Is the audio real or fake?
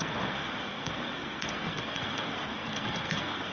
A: fake